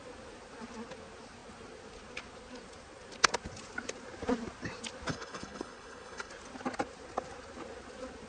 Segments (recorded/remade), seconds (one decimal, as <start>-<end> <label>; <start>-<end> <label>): 0.0-5.1 recorded; 5.1-6.3 remade; 6.3-8.3 recorded